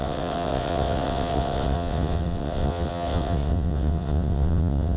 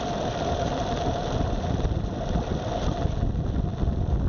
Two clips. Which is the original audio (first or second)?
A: second